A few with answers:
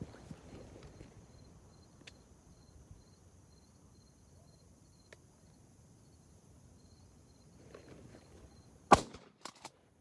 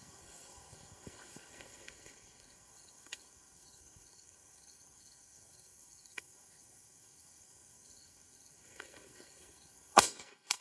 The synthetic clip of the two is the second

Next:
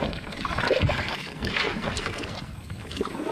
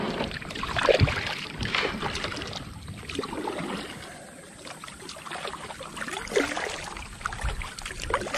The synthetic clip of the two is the first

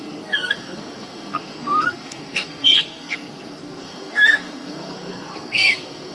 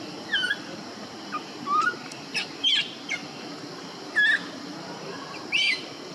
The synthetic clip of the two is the first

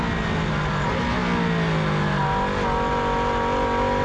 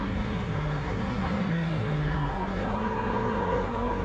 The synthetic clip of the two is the second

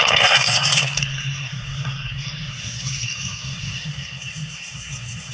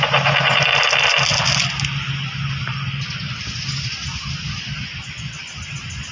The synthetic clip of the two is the first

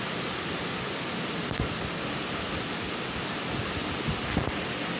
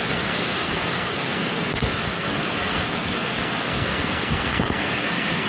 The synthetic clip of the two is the second